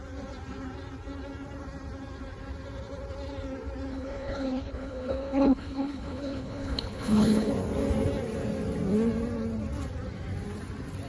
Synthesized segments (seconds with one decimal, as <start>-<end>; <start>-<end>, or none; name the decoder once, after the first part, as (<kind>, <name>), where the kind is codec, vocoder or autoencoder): 3.9-7.5 (codec, HILCodec)